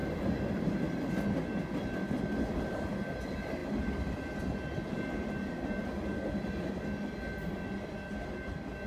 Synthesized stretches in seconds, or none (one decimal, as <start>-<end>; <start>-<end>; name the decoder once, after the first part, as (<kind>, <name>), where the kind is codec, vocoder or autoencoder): 0.0-1.1 (vocoder, BigVGAN v2)